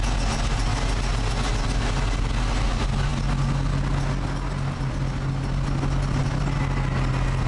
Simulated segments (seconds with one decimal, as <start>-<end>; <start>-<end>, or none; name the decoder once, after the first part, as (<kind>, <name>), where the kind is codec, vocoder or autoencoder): none